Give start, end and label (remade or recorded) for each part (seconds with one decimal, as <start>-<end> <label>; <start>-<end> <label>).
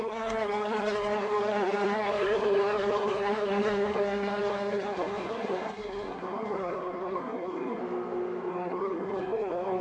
0.0-7.8 remade; 7.8-8.5 recorded; 8.5-9.8 remade